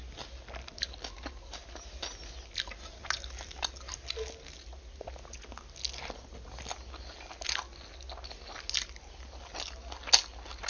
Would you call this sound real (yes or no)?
yes